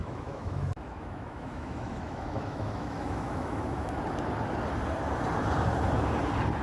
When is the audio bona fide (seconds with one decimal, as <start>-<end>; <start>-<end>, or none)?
4.0-6.6